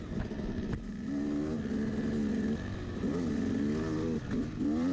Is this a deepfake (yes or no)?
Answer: no